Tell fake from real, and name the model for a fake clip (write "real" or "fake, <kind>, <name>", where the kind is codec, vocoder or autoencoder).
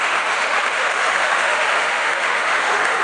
fake, autoencoder, DAC-VAE